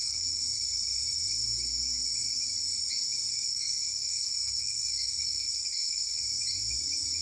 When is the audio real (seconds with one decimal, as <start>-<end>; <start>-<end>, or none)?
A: 0.6-3.3; 6.2-7.2